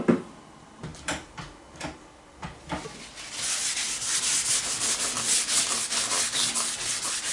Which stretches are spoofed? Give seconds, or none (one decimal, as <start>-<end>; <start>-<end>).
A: none